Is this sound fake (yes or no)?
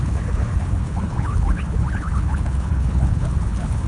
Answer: yes